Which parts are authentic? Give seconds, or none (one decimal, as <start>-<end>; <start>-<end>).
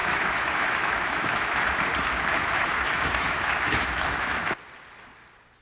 1.8-2.3; 4.4-5.6